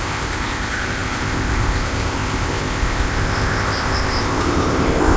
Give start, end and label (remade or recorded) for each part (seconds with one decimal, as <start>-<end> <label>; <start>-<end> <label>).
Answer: 0.0-5.2 remade